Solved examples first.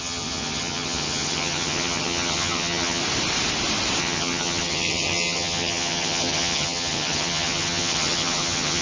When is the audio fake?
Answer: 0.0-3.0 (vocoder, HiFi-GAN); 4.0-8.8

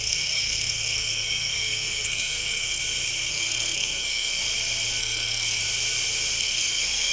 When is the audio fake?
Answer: 0.0-2.8 (codec, SNAC); 3.3-4.4; 5.0-5.6; 6.4-7.1

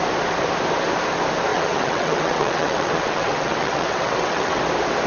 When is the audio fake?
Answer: 1.5-4.6 (vocoder, WaveNeXt)

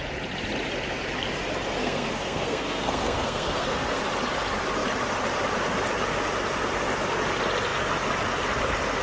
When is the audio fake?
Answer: 1.8-4.0 (codec, SNAC)

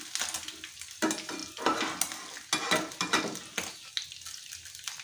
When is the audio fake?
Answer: none